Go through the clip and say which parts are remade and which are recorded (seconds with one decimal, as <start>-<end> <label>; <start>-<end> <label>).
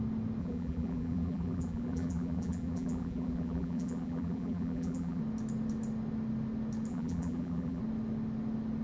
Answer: 0.0-0.4 recorded; 0.4-5.2 remade; 5.2-6.9 recorded; 6.9-7.8 remade; 7.8-8.8 recorded